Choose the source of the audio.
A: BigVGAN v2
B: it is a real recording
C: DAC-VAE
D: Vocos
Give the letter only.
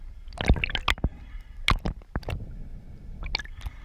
B